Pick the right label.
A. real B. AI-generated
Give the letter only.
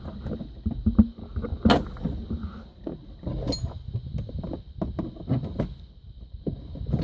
A